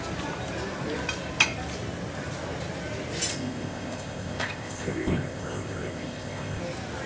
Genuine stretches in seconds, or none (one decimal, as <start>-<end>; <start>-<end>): 0.0-3.3; 6.6-7.1